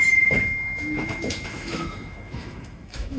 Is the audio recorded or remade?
remade